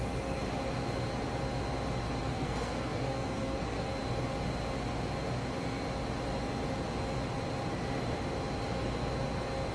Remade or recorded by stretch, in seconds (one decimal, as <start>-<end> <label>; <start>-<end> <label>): 0.0-2.2 recorded; 2.2-3.9 remade; 3.9-9.7 recorded